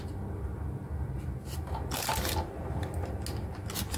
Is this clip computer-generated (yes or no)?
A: no